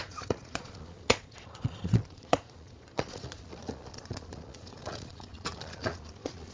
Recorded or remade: remade